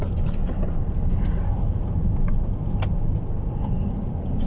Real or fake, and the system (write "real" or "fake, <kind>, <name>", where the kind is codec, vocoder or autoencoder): real